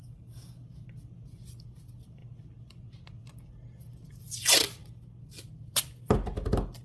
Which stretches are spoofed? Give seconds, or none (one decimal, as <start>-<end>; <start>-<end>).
0.0-0.6